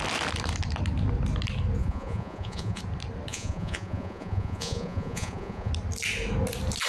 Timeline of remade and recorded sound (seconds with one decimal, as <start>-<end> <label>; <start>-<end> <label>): 0.0-1.8 recorded; 1.8-2.8 remade; 2.8-3.3 recorded; 3.3-5.7 remade; 5.7-6.9 recorded